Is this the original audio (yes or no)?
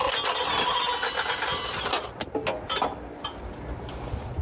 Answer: yes